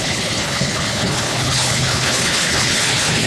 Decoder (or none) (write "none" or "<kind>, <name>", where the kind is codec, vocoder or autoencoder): codec, HILCodec